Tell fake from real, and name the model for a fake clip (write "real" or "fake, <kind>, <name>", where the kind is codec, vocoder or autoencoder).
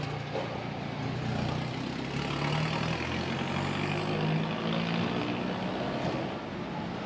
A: real